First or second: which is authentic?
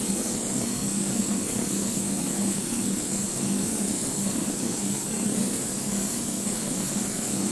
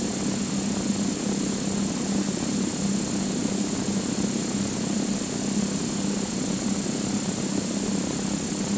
second